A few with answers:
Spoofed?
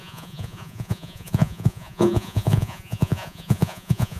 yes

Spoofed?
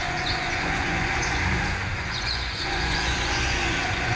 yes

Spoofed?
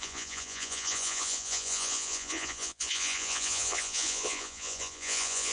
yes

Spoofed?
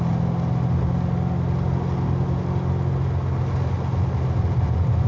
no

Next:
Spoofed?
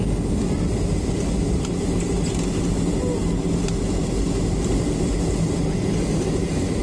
no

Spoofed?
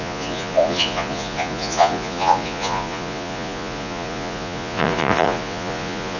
yes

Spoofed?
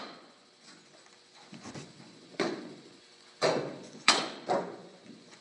yes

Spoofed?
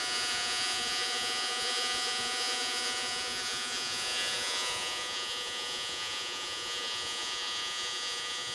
yes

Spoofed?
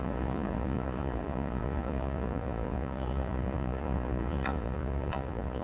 yes